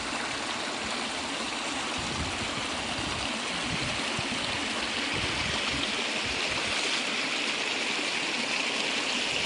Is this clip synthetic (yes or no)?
no